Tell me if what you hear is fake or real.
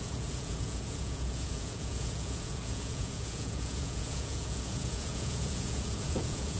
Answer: fake